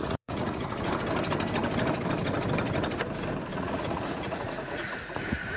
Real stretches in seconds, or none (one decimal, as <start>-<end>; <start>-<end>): 0.9-3.5